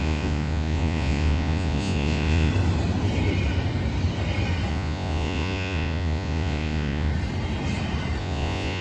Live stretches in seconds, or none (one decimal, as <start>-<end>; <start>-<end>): 2.5-4.7; 7.1-8.2